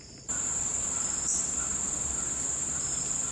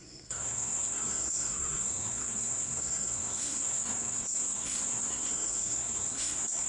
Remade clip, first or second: second